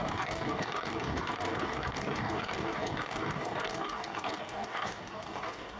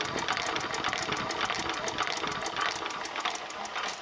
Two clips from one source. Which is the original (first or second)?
second